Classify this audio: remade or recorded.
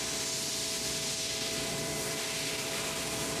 remade